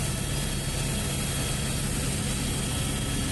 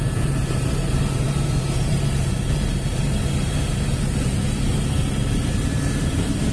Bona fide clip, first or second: first